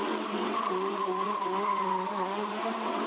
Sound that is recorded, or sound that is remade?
remade